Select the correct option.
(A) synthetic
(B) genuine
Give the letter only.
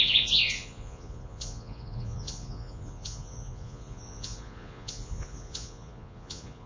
A